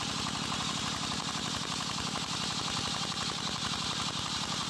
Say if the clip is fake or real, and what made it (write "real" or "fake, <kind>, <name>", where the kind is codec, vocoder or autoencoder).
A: real